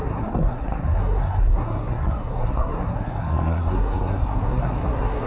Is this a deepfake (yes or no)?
yes